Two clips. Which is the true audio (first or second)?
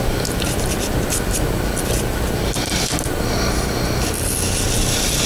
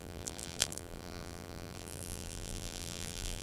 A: first